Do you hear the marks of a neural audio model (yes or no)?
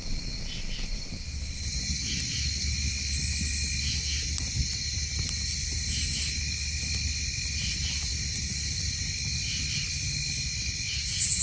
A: no